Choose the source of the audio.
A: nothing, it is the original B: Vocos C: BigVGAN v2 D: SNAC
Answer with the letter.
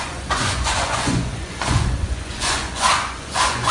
B